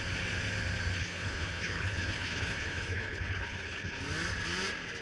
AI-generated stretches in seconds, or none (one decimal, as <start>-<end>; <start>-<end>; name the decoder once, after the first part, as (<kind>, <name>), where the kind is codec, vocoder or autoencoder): 1.0-4.0 (codec, HILCodec)